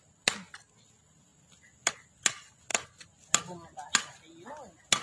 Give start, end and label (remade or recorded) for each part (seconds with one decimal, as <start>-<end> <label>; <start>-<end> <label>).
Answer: 0.0-5.0 recorded